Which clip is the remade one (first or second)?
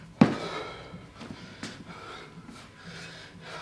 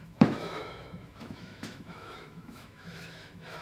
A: second